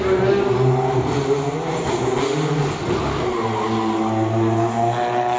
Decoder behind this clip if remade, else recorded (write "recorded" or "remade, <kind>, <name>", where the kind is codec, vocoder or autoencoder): recorded